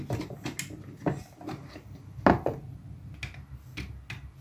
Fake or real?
real